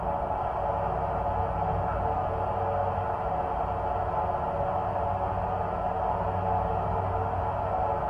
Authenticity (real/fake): real